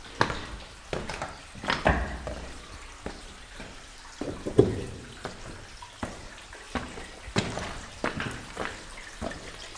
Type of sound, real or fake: real